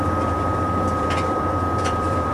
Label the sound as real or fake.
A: fake